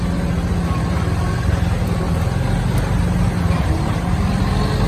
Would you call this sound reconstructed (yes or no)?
no